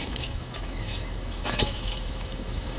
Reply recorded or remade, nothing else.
remade